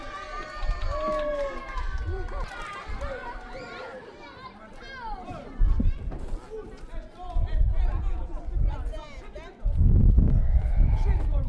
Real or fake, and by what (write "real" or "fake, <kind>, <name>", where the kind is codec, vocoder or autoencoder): real